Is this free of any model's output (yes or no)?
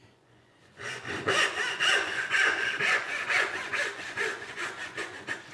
no